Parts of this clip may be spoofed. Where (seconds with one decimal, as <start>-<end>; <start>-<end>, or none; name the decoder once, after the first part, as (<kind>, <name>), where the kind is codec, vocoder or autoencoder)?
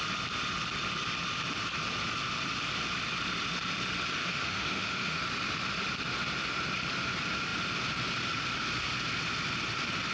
4.2-5.2 (autoencoder, DAC-VAE)